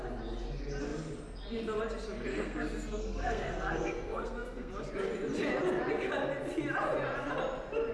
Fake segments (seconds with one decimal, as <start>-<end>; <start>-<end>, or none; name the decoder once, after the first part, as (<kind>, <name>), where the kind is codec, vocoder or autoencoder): 2.3-4.7 (codec, SNAC)